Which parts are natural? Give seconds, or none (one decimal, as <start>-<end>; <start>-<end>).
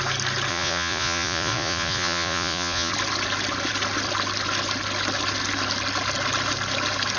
0.0-0.5; 2.9-7.2